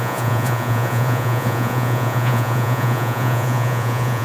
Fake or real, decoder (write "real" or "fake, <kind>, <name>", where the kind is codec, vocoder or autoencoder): fake, vocoder, Vocos